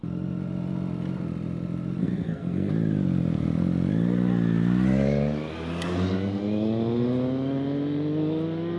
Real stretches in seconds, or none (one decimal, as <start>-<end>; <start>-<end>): 0.0-2.0; 2.7-8.8